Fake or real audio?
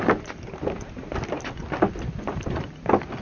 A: real